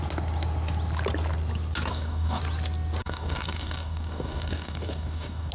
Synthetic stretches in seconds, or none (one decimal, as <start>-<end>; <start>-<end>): 1.9-2.4; 3.0-5.5